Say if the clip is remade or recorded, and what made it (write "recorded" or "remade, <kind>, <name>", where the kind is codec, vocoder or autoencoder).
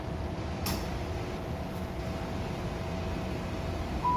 recorded